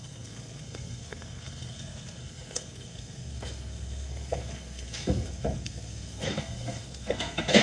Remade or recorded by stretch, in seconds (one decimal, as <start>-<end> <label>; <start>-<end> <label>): 0.0-7.6 remade